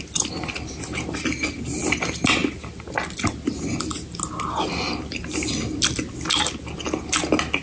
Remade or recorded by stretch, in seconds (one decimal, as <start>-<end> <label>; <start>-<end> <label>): 0.0-7.6 recorded